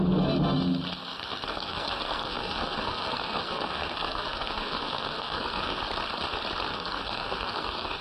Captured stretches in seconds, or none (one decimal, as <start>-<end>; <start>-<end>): 0.0-1.0; 5.8-6.7